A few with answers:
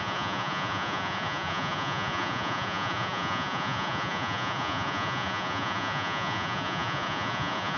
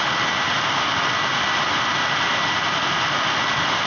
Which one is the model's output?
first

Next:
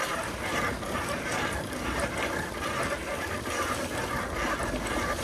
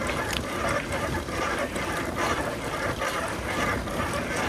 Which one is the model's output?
second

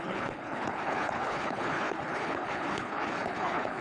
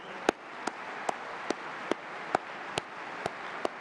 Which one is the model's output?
first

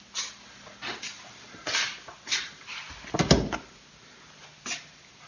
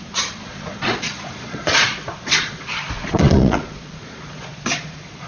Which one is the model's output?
second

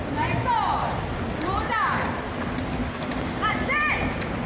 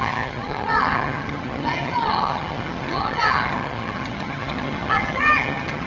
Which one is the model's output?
second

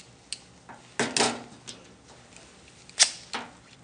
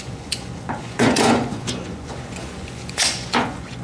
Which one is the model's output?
second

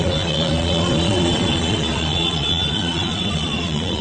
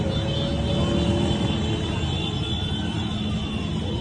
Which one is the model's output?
first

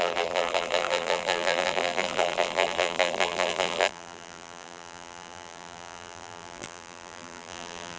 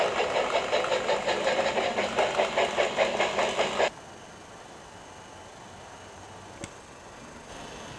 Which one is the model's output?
first